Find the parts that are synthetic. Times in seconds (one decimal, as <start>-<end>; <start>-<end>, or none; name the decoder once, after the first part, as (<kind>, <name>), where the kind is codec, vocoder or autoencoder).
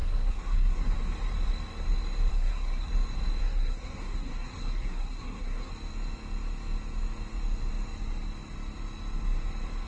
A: 0.0-0.9 (codec, SNAC); 2.3-2.9; 3.4-5.7